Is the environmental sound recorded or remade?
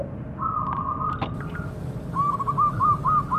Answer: recorded